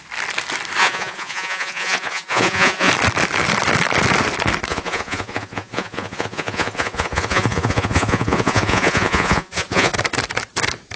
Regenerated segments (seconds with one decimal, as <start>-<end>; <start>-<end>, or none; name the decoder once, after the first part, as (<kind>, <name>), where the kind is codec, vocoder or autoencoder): 0.8-2.9 (vocoder, Vocos); 4.7-9.9